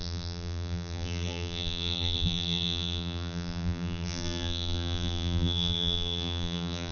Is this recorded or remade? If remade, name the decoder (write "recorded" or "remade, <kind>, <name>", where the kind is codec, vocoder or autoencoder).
remade, vocoder, BigVGAN v2